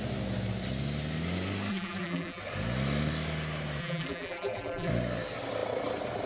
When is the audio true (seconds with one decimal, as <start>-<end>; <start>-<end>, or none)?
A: 0.0-1.7; 2.4-3.8; 4.9-6.3